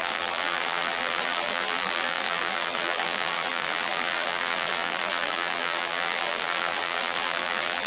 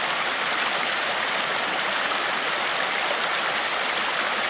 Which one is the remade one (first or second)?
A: first